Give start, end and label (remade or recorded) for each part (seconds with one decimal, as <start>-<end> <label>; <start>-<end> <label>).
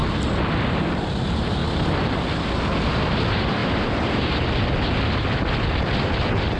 0.0-0.8 remade; 0.8-1.6 recorded; 1.6-2.6 remade; 2.6-6.6 recorded